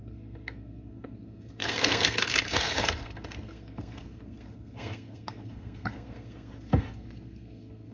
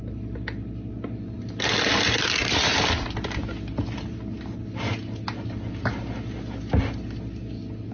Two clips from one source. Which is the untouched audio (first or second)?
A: second